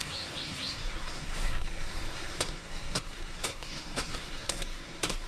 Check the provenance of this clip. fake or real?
fake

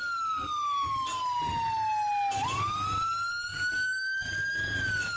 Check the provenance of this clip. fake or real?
real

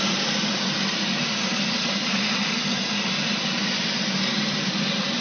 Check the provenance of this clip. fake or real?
real